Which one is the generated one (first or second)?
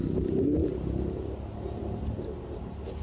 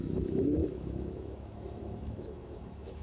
second